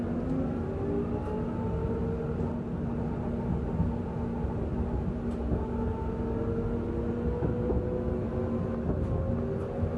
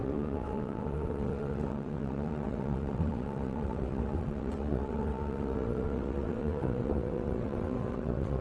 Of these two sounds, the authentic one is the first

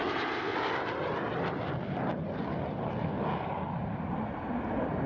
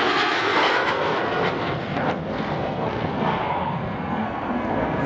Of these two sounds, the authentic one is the first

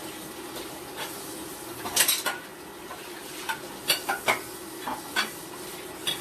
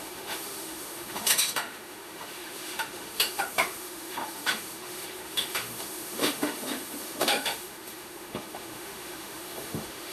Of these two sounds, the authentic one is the first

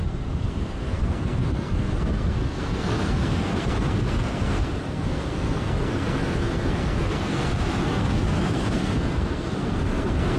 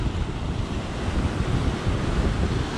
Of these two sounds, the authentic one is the second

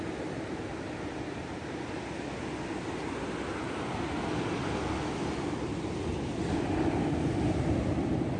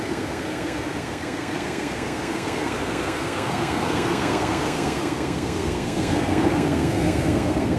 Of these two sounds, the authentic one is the first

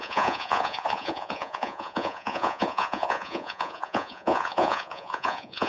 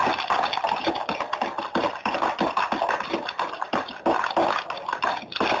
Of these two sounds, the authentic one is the second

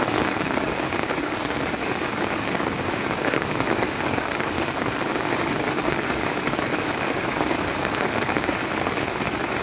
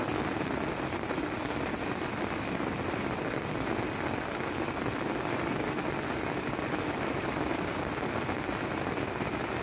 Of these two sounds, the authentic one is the second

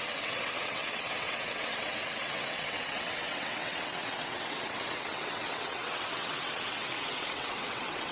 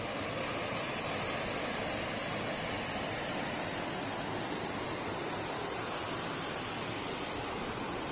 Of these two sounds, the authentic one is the second